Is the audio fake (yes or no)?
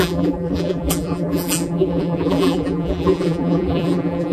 yes